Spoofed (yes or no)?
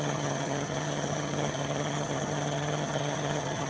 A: yes